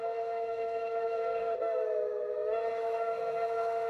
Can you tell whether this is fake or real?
fake